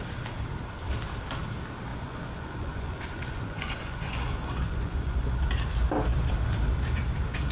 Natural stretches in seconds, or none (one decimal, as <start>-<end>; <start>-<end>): 0.0-1.9; 5.4-7.5